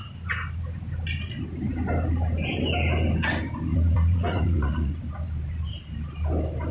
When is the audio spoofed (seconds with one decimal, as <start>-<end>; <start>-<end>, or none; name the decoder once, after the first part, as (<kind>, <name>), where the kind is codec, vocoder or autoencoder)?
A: 3.7-4.9 (vocoder, Vocos)